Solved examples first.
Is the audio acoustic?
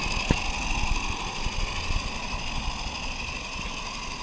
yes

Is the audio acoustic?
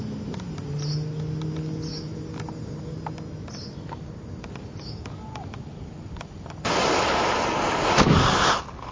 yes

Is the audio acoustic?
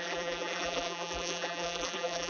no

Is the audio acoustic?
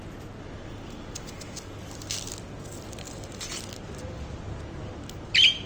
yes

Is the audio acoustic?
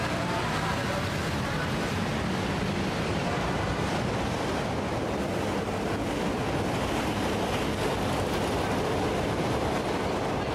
yes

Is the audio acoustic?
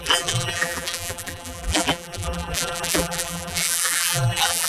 no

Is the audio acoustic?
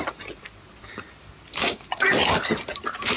no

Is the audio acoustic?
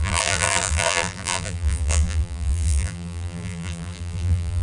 no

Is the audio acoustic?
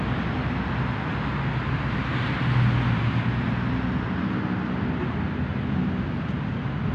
yes